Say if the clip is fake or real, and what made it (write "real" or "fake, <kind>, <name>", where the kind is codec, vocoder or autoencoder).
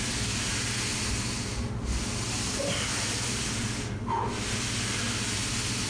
real